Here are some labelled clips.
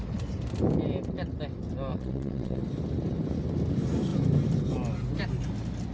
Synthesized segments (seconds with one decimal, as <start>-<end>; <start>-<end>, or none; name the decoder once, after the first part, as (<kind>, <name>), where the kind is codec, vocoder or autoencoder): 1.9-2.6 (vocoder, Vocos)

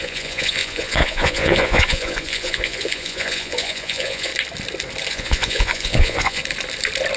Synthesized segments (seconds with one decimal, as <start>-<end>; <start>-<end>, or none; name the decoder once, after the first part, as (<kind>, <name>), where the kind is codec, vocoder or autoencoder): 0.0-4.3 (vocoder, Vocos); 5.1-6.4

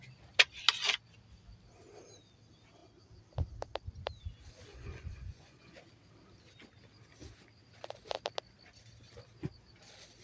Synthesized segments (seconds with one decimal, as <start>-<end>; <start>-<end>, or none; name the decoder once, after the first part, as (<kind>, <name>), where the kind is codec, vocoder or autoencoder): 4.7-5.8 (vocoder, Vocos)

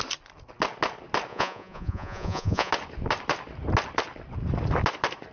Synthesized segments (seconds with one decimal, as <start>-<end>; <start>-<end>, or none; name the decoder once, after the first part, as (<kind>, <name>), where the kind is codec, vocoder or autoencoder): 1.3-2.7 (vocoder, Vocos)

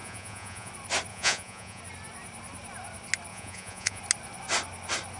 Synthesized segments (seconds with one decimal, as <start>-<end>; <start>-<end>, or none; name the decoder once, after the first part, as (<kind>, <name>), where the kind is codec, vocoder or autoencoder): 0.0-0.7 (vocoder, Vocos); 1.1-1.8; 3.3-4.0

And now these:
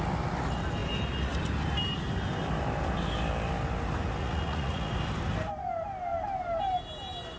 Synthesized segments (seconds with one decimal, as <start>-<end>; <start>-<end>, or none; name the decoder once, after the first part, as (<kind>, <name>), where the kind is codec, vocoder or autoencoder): 4.2-4.9 (vocoder, Vocos)

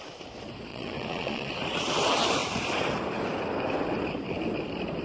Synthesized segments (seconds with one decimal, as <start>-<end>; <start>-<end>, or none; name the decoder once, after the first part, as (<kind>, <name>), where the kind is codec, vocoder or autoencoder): 0.7-1.5 (vocoder, Vocos)

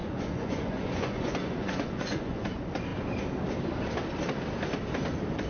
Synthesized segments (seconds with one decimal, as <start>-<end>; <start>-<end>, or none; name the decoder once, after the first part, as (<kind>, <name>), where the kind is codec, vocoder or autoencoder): 0.0-2.5 (vocoder, Vocos)